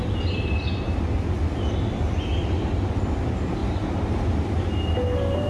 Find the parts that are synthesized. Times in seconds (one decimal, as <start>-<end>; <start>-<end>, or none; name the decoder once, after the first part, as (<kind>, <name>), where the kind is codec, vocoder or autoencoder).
3.6-4.3 (vocoder, BigVGAN v2)